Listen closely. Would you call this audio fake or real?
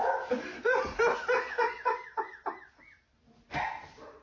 real